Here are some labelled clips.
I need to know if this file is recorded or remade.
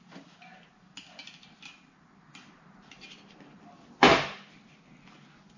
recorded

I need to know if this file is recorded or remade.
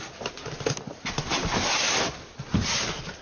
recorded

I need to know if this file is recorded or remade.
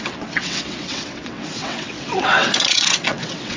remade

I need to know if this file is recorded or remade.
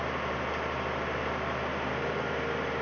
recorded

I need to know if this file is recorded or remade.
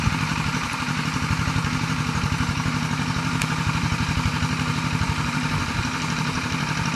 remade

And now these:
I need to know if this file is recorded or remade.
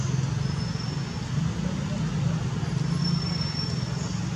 recorded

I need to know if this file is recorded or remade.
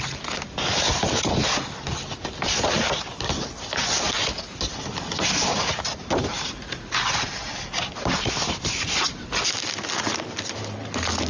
recorded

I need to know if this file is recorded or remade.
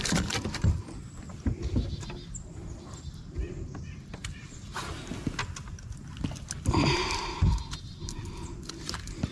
recorded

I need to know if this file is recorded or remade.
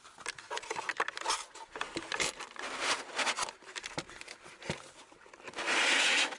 recorded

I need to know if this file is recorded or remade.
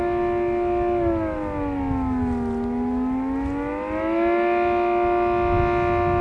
recorded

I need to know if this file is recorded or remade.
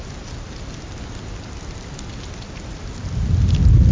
recorded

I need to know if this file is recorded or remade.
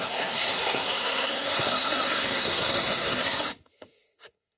remade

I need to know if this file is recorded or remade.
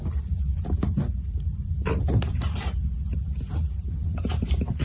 remade